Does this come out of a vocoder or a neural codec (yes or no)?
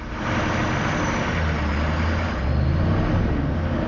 no